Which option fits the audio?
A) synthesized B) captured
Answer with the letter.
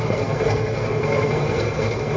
A